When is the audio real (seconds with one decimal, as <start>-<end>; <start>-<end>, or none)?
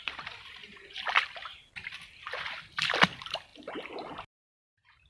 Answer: 3.5-4.6